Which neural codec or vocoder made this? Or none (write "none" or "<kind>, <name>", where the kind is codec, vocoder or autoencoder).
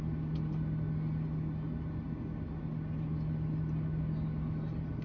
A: none